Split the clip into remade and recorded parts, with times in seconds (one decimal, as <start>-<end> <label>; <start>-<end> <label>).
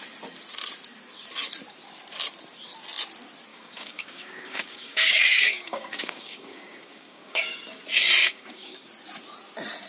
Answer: 0.0-3.5 recorded; 3.5-7.8 remade; 7.8-8.2 recorded; 8.2-8.9 remade; 8.9-9.9 recorded